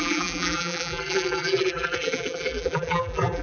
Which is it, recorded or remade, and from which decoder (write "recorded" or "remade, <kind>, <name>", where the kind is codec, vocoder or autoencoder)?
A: remade, vocoder, BigVGAN v2